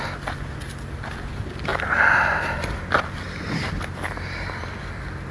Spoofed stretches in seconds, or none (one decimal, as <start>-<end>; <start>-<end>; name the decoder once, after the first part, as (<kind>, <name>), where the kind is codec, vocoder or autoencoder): none